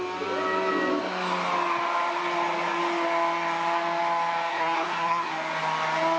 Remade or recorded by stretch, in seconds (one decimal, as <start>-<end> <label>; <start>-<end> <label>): 0.0-4.5 recorded; 4.5-5.3 remade; 5.3-6.2 recorded

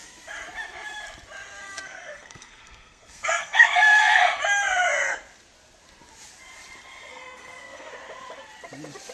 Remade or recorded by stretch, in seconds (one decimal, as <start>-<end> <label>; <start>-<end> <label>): 0.0-1.6 recorded; 1.6-4.4 remade; 4.4-7.1 recorded; 7.1-7.9 remade; 7.9-9.1 recorded

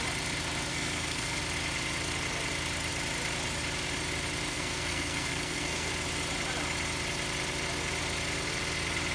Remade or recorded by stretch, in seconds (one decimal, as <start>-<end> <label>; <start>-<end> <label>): 0.0-0.7 recorded; 0.7-1.4 remade; 1.4-4.5 recorded; 4.5-5.9 remade; 5.9-9.1 recorded

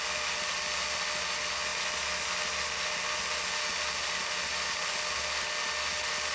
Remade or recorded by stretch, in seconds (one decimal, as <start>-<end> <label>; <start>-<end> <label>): 0.0-6.3 recorded